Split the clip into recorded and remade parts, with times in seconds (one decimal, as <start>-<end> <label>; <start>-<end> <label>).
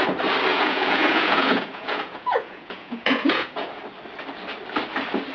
0.0-0.5 recorded; 0.5-3.7 remade; 3.7-5.3 recorded